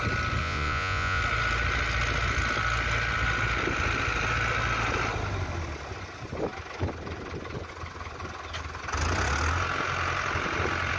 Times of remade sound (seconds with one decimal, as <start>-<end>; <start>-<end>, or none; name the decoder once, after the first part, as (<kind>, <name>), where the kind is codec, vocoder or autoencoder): 0.4-1.2 (vocoder, Vocos)